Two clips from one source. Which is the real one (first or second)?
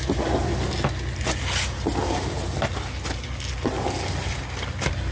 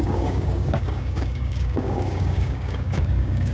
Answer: first